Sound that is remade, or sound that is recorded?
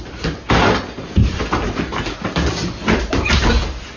recorded